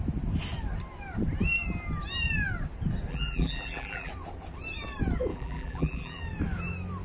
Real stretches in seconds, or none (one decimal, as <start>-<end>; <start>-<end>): 0.0-3.1; 4.1-5.3; 6.2-7.0